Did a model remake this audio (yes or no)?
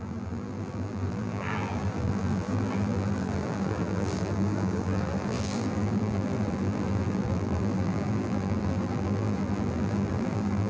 yes